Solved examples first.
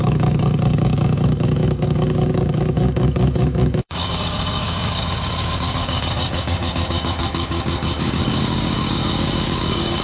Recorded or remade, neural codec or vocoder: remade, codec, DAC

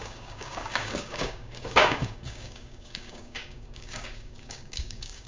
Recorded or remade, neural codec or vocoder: remade, codec, DAC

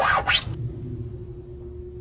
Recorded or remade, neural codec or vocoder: recorded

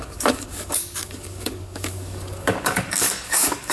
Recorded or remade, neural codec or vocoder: remade, codec, DAC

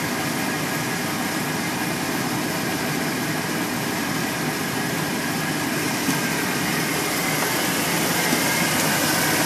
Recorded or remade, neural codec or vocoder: recorded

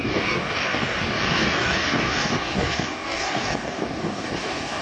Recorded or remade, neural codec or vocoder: remade, codec, DAC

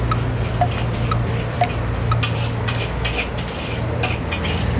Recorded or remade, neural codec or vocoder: recorded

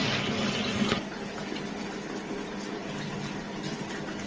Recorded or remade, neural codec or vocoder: recorded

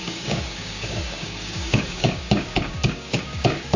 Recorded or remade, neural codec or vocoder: remade, codec, DAC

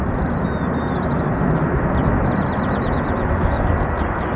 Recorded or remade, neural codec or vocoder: recorded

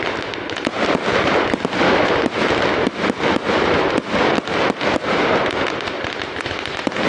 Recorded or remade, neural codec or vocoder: recorded